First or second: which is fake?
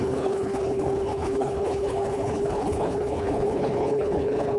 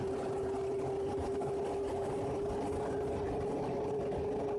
first